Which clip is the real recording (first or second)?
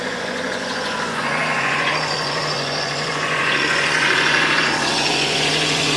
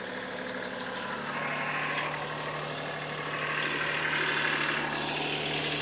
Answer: second